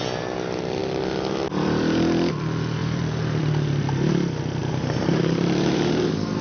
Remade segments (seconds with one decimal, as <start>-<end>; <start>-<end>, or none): 2.8-3.4; 4.6-6.4